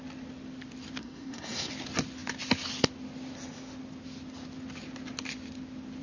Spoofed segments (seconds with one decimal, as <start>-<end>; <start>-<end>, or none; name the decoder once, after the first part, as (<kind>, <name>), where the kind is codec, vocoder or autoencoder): 1.0-1.7 (codec, SNAC)